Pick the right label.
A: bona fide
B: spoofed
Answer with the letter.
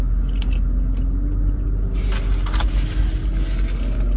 A